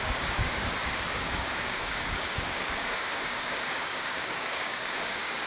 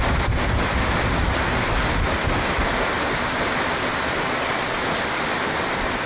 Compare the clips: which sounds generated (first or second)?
first